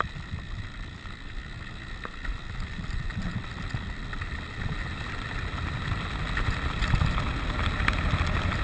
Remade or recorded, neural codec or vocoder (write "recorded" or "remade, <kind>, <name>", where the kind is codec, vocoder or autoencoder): recorded